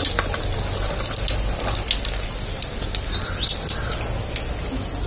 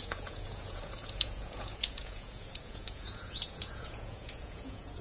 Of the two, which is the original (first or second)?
first